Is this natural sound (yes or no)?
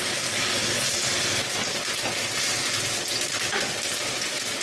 yes